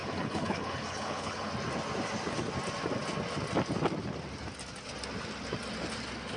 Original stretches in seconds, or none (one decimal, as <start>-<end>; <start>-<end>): 1.5-6.4